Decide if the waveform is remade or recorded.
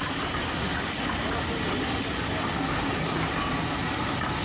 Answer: recorded